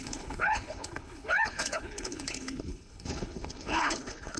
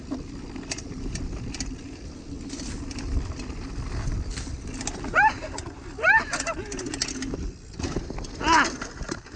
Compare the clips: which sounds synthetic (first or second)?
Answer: first